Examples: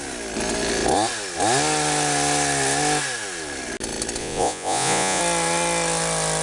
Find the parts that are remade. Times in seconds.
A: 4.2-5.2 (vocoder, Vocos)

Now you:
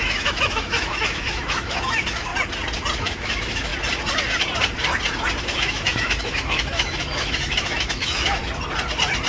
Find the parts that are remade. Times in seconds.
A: 0.0-2.3 (autoencoder, DAC-VAE); 3.0-3.7; 5.4-8.4